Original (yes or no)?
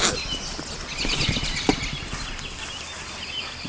yes